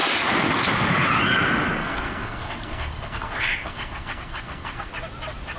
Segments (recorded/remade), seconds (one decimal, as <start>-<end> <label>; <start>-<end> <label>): 0.0-1.8 recorded; 1.8-4.9 remade; 4.9-5.6 recorded